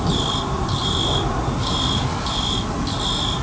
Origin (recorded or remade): recorded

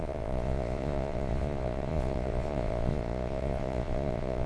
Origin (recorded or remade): remade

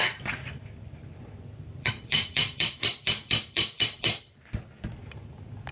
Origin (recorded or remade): remade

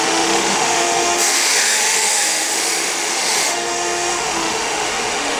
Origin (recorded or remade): remade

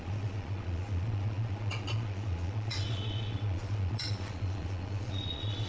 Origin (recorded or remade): remade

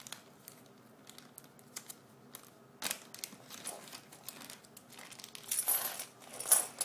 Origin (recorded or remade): recorded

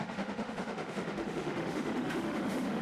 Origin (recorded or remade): remade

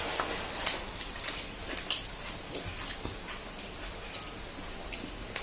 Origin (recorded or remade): recorded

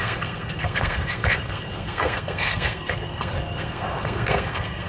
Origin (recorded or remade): remade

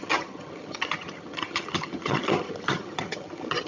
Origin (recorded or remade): remade